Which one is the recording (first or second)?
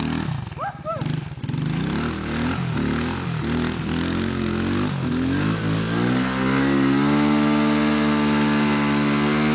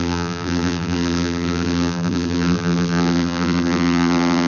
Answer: first